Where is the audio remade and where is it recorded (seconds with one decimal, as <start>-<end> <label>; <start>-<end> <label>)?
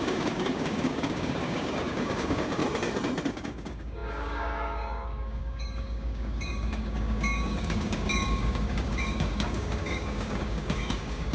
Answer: 0.0-2.6 remade; 2.6-3.3 recorded; 3.3-11.3 remade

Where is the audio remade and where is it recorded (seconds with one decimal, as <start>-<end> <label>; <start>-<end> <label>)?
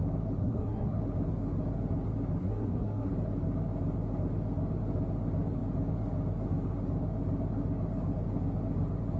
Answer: 0.0-0.4 recorded; 0.4-1.0 remade; 1.0-2.4 recorded; 2.4-3.1 remade; 3.1-9.2 recorded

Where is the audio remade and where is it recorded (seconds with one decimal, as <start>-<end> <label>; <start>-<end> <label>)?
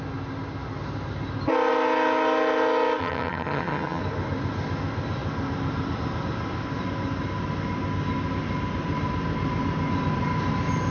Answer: 0.0-3.0 recorded; 3.0-4.0 remade; 4.0-10.9 recorded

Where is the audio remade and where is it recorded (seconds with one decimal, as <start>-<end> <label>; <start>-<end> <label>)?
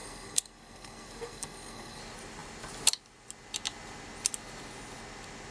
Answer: 0.0-2.0 remade; 2.0-5.5 recorded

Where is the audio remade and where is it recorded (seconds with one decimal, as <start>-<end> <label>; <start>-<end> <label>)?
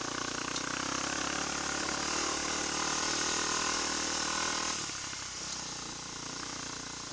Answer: 0.0-7.1 recorded